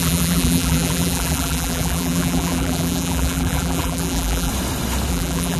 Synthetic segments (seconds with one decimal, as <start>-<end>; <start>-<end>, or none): 0.0-4.5; 5.1-5.6